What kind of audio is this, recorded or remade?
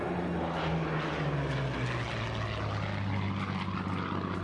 recorded